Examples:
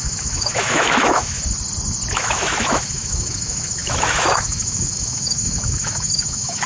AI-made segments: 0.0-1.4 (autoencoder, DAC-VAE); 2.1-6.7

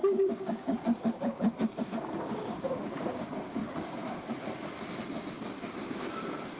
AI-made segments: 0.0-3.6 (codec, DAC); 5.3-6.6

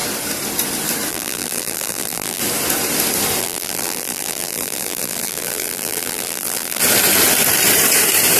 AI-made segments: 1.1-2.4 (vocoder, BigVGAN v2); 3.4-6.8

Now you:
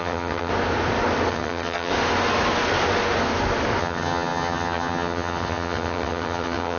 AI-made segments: 0.0-0.5 (vocoder, HiFi-GAN); 1.3-1.9; 3.8-6.8